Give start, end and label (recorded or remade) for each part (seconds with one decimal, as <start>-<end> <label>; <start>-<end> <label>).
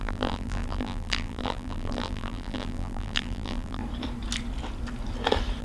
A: 0.0-3.8 remade; 3.8-5.6 recorded